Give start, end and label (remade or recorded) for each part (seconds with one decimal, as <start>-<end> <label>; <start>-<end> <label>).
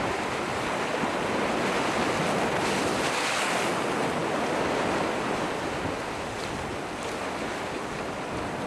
0.0-8.7 recorded